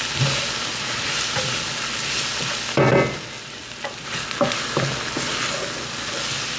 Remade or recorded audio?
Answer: recorded